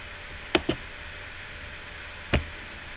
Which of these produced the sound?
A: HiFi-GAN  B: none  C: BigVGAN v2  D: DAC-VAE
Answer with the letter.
B